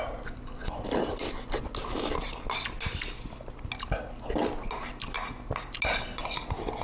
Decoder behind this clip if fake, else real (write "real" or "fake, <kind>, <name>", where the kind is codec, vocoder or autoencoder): real